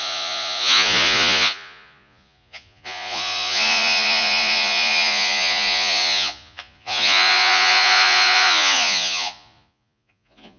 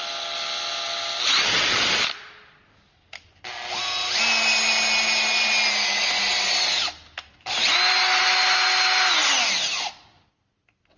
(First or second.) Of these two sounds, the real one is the second